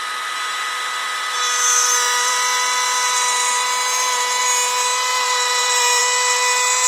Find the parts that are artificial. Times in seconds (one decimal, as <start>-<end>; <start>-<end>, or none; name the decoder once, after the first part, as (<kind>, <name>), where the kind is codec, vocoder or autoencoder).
1.0-4.4 (vocoder, BigVGAN v2); 5.1-6.0